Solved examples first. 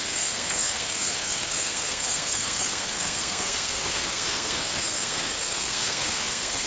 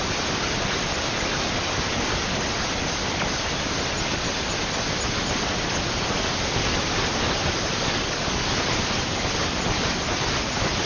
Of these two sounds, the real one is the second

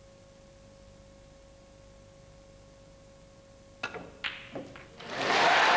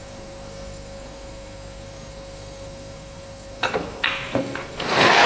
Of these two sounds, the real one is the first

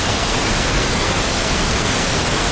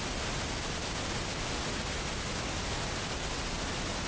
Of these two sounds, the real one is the second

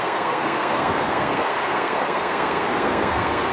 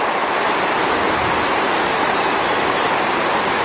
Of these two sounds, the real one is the second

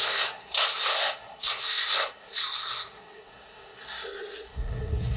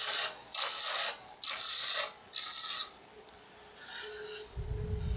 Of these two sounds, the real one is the second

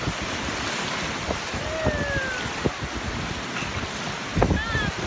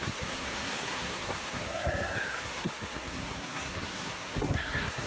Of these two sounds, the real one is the first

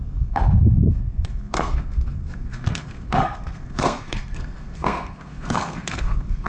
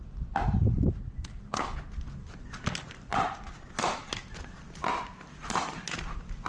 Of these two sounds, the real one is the second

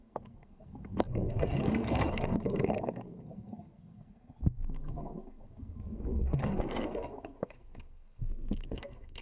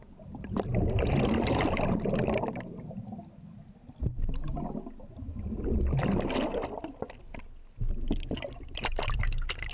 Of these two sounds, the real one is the second